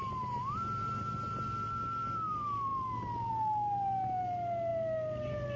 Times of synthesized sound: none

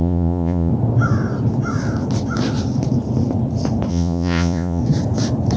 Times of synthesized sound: 0.0-0.7 (vocoder, Vocos); 3.9-4.8

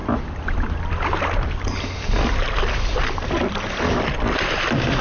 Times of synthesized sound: none

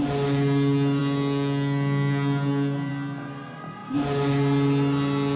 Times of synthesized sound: none

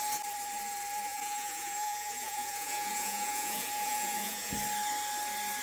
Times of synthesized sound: 1.1-4.5 (vocoder, Vocos)